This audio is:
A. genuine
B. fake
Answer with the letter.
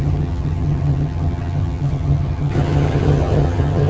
B